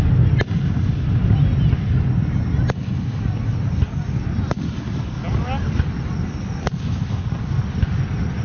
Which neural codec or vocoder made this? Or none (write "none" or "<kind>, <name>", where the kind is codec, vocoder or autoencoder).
none